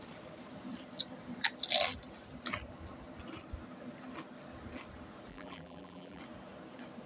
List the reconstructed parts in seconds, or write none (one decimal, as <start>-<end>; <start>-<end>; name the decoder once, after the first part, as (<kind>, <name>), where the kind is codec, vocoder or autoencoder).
5.3-6.2 (vocoder, BigVGAN v2)